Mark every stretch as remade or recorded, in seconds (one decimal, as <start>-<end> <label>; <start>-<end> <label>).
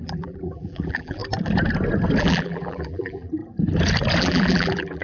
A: 0.0-1.2 remade; 1.2-2.2 recorded; 2.2-3.4 remade; 3.4-4.2 recorded; 4.2-5.0 remade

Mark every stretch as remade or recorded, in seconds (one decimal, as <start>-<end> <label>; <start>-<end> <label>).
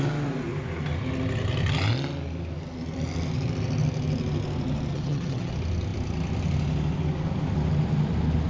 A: 0.0-4.9 recorded; 4.9-5.5 remade; 5.5-8.5 recorded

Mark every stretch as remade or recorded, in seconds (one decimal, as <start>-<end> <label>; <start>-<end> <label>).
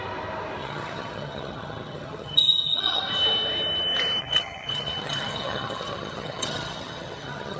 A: 0.0-0.6 recorded; 0.6-3.0 remade; 3.0-4.2 recorded; 4.2-7.6 remade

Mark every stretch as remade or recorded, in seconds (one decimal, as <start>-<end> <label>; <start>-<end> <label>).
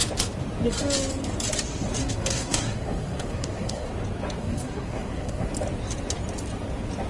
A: 0.0-2.0 recorded; 2.0-3.9 remade; 3.9-4.4 recorded; 4.4-5.5 remade; 5.5-7.1 recorded